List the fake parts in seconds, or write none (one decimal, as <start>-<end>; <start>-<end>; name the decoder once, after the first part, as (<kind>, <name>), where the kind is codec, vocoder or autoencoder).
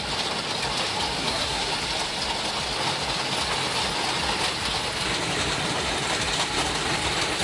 1.2-1.7 (codec, SNAC)